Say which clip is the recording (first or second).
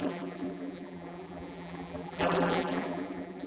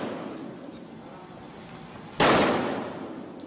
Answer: second